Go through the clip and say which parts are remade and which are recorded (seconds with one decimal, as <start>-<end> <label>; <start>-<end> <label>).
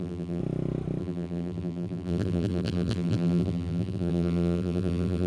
0.0-0.4 remade; 0.4-1.0 recorded; 1.0-5.3 remade